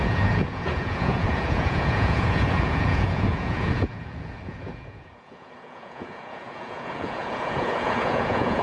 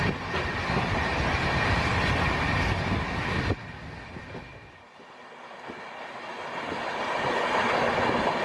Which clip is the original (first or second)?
second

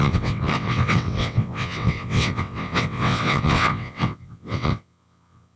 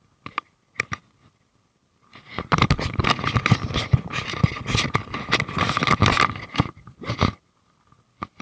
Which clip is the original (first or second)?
second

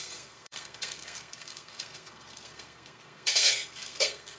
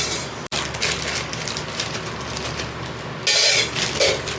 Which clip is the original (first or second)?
second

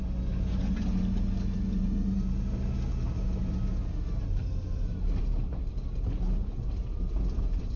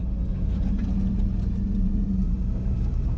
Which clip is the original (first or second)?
first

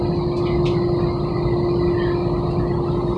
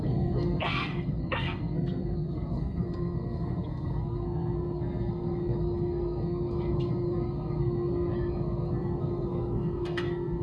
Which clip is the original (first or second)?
first